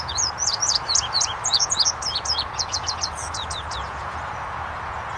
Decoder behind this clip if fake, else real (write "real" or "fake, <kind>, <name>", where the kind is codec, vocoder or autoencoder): fake, vocoder, Vocos